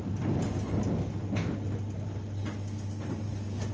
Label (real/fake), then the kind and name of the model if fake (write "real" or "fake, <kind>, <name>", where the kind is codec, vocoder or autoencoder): real